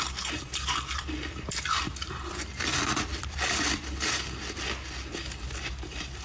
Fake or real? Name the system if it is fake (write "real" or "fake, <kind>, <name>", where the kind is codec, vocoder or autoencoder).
real